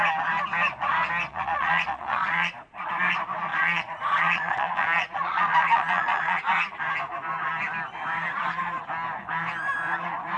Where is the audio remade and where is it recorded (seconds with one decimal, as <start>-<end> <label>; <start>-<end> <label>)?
0.0-1.3 recorded; 1.3-2.9 remade; 2.9-3.5 recorded; 3.5-6.4 remade; 6.4-10.4 recorded

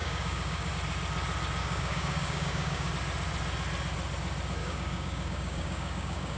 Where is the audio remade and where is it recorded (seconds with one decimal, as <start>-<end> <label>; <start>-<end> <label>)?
0.0-0.7 remade; 0.7-1.6 recorded; 1.6-2.9 remade; 2.9-4.6 recorded; 4.6-6.4 remade

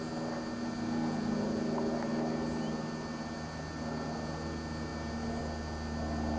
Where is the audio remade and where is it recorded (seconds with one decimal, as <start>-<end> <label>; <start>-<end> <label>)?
0.0-6.4 recorded

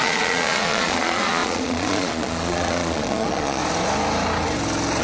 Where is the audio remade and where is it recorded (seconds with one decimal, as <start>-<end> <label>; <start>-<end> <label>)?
0.0-3.6 remade; 3.6-5.0 recorded

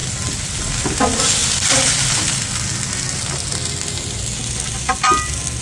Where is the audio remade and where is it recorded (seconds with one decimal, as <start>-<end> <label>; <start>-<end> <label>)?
0.0-5.6 recorded

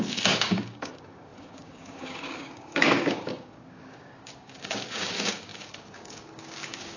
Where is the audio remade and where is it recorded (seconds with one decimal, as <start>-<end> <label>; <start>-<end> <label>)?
0.0-7.0 remade

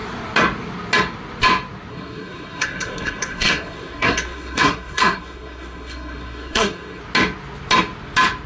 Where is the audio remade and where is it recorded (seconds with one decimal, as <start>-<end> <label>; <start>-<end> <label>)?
0.0-1.9 recorded; 1.9-7.0 remade; 7.0-8.5 recorded